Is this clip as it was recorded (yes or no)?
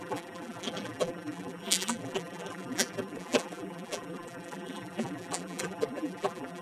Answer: no